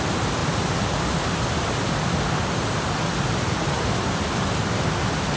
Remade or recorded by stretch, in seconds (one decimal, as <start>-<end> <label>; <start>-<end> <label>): 0.0-0.4 recorded; 0.4-2.0 remade; 2.0-5.4 recorded